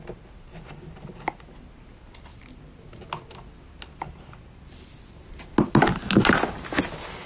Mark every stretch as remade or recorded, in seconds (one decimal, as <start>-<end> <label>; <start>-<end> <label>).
0.0-7.3 recorded